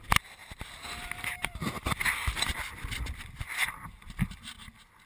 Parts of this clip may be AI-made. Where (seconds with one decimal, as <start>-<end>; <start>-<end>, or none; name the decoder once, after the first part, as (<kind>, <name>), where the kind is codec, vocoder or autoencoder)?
0.4-1.8 (vocoder, BigVGAN v2)